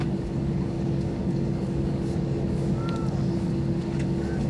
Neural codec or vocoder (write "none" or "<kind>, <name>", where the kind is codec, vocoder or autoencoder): codec, DAC